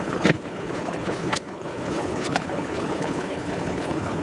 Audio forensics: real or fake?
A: fake